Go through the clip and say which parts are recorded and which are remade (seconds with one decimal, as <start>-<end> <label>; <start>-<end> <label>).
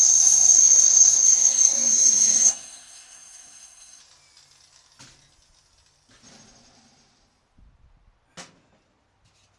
0.0-4.0 remade; 4.0-9.6 recorded